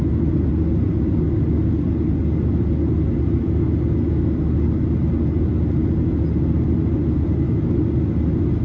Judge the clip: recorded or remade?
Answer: recorded